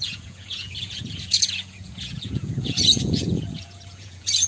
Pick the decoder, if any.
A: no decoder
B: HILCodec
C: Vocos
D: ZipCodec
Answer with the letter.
C